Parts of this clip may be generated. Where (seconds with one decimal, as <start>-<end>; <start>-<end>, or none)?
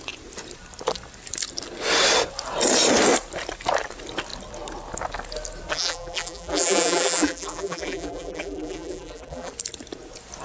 5.7-9.5